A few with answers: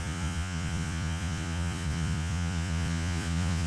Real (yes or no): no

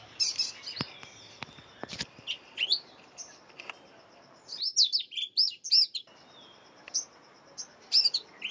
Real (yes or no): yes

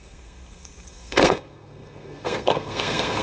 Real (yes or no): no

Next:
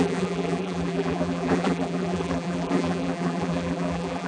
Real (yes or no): no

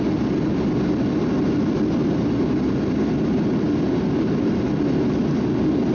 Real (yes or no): yes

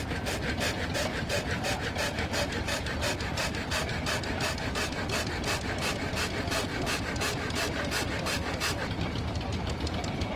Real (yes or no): yes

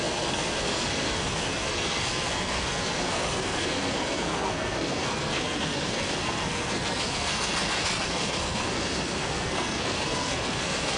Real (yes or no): no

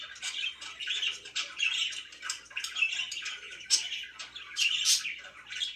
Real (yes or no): no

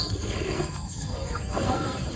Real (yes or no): no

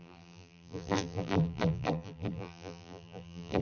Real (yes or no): no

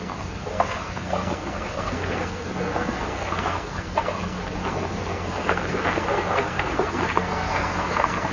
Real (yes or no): no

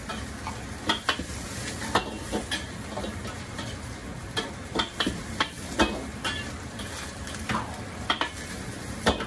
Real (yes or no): yes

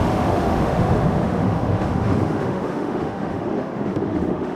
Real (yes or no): no